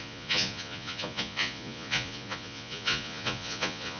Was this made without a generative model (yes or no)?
no